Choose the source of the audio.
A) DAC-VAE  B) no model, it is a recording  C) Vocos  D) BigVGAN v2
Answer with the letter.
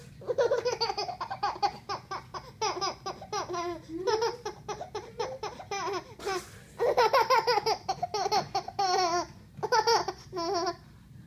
B